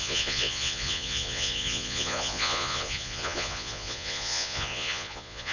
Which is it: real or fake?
fake